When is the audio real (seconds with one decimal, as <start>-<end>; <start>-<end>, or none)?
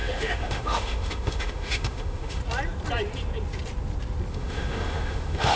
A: 2.4-4.3